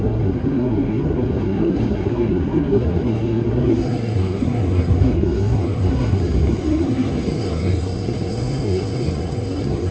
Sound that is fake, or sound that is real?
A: fake